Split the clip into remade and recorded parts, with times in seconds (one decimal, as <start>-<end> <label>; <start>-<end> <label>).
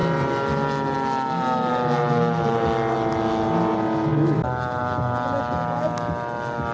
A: 0.0-6.7 recorded